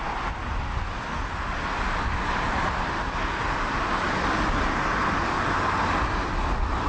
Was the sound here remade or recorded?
recorded